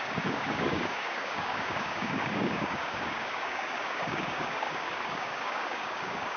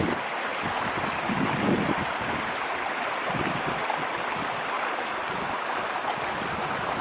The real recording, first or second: second